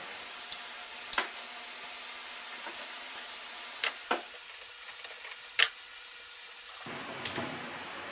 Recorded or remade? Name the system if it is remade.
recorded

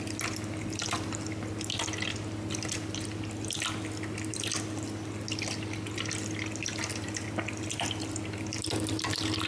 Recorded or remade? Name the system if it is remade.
recorded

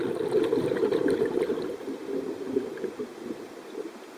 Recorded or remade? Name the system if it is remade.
recorded